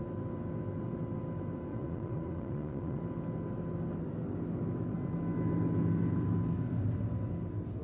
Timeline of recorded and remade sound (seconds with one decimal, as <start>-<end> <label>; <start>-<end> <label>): 0.0-1.7 recorded; 1.7-3.0 remade; 3.0-7.8 recorded